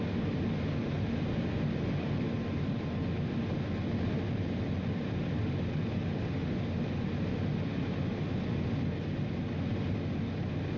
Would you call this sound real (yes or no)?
yes